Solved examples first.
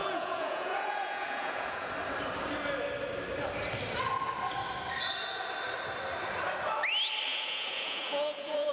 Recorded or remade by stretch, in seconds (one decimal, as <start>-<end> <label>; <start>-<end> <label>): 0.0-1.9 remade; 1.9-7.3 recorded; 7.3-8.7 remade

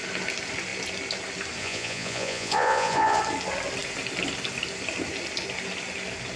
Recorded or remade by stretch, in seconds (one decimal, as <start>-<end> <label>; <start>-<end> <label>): 0.0-1.6 recorded; 1.6-3.2 remade; 3.2-6.4 recorded

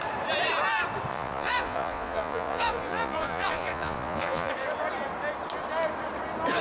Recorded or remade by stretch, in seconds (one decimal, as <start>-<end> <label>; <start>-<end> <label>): 0.0-1.1 recorded; 1.1-4.5 remade; 4.5-6.6 recorded